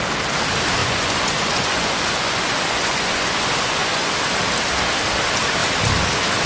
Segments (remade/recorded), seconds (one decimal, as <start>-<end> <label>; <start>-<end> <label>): 0.0-0.8 recorded; 0.8-4.1 remade; 4.1-6.5 recorded